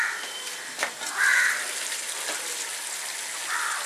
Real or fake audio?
real